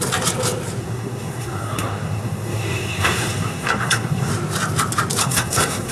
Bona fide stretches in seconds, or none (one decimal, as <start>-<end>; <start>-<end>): 0.0-0.8; 4.3-5.2